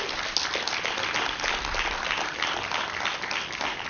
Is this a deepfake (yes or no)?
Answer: no